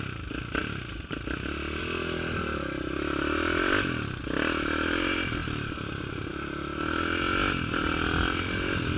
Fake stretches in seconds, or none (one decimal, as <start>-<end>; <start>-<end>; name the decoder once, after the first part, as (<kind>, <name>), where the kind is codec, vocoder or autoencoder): none